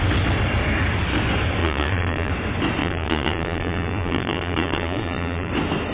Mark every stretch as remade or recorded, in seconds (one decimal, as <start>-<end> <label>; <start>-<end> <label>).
0.0-1.6 recorded; 1.6-2.3 remade; 2.3-2.8 recorded; 2.8-5.5 remade; 5.5-5.9 recorded

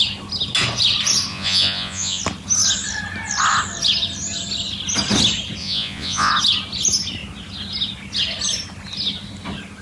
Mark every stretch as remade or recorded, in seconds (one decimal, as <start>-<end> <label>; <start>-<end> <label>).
0.0-1.3 recorded; 1.3-2.2 remade; 2.2-5.6 recorded; 5.6-6.3 remade; 6.3-9.8 recorded